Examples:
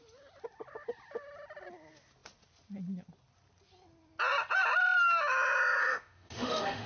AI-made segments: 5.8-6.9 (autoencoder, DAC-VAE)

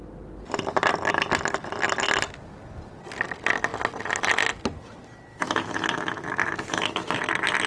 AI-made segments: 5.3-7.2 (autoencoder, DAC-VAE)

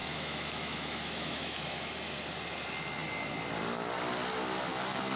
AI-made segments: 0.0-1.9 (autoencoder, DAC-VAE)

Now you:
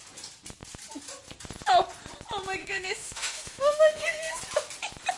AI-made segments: 2.6-4.4 (autoencoder, DAC-VAE)